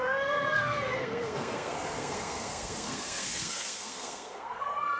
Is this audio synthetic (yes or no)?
yes